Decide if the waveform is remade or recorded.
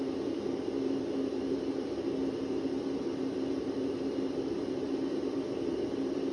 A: recorded